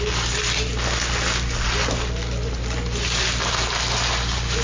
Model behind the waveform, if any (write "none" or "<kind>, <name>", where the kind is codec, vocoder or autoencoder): none